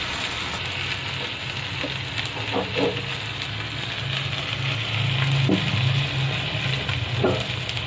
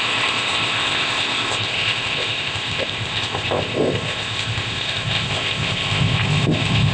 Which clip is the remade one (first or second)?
second